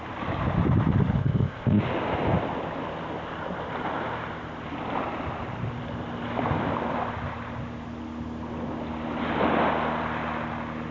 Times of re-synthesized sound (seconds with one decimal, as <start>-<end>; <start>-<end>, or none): 1.2-1.8